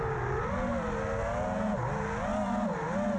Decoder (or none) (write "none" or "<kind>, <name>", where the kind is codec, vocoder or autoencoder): none